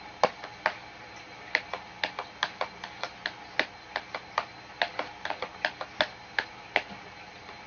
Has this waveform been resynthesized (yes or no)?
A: no